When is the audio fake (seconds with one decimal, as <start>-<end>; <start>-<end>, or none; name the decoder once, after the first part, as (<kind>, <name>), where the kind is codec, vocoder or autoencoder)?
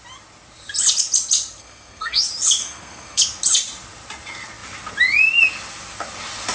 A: 1.6-2.2 (codec, SNAC); 2.6-3.2